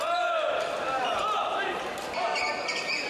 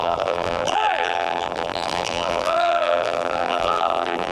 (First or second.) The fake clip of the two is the second